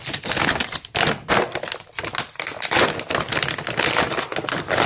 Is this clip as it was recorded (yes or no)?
yes